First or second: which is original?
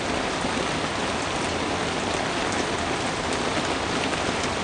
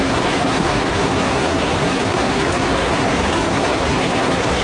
first